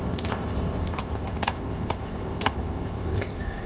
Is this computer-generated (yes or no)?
yes